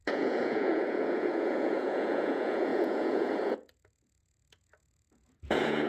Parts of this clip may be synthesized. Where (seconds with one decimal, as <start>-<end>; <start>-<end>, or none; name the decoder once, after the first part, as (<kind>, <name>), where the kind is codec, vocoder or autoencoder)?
0.0-5.9 (vocoder, Vocos)